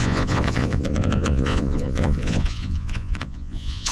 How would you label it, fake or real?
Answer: fake